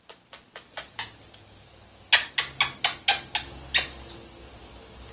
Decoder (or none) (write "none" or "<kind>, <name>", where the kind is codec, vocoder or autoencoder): none